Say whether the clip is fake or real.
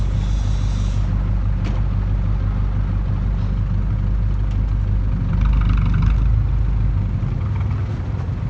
real